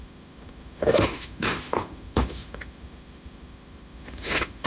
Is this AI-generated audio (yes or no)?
yes